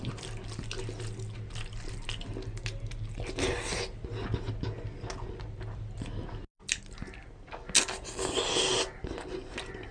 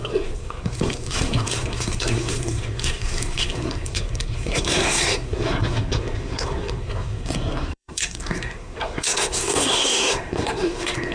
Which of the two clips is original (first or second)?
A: first